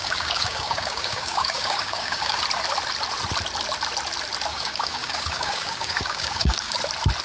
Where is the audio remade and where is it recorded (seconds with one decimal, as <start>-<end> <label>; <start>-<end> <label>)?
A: 0.0-2.4 remade; 2.4-4.5 recorded; 4.5-6.8 remade; 6.8-7.2 recorded